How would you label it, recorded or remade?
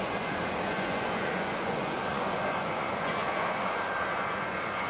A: remade